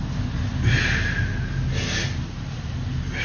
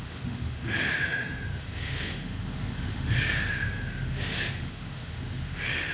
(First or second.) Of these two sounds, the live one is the first